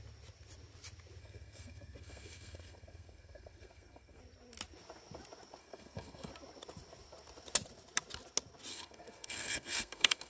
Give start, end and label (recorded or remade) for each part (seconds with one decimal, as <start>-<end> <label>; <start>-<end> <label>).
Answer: 0.0-1.2 recorded; 1.2-4.2 remade; 4.2-5.6 recorded; 5.6-6.3 remade; 6.3-8.7 recorded; 8.7-10.3 remade